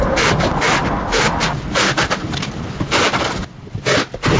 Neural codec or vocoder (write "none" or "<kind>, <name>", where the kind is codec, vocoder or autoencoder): none